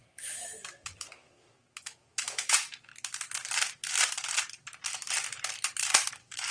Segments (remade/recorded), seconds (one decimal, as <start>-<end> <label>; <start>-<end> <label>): 0.0-2.9 remade; 2.9-6.1 recorded; 6.1-6.5 remade